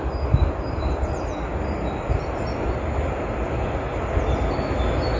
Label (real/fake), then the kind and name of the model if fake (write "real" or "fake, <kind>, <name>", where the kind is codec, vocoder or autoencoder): real